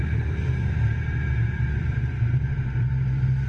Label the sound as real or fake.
fake